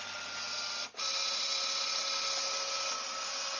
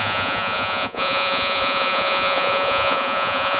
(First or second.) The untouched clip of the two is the first